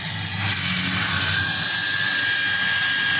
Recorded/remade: recorded